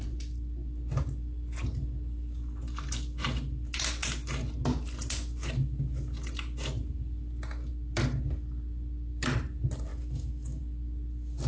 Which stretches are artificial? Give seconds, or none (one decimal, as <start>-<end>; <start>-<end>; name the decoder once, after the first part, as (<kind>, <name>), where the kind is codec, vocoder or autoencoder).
9.9-10.6 (autoencoder, DAC-VAE)